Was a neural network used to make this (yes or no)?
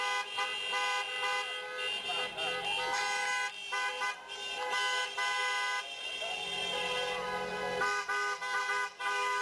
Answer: no